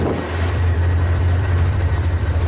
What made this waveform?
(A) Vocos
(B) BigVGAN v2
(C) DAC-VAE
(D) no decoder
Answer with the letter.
B